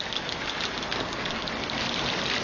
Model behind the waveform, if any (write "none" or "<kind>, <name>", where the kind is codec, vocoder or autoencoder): none